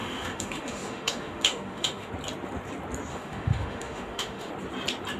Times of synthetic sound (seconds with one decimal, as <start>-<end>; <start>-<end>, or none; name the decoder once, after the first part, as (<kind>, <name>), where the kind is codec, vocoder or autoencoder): 0.0-2.1 (autoencoder, DAC-VAE); 3.1-4.5